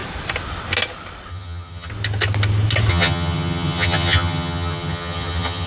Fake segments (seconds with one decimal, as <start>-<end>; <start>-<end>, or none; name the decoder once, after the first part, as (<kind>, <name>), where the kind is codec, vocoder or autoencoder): 1.3-1.9 (vocoder, HiFi-GAN); 2.9-5.7